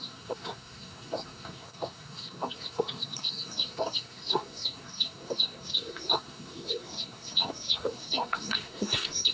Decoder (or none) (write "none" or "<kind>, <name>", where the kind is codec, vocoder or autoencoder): codec, SNAC